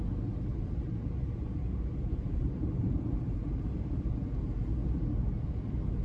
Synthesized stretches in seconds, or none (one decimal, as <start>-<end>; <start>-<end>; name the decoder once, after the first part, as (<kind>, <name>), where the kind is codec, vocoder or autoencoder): 0.5-4.1 (vocoder, BigVGAN v2)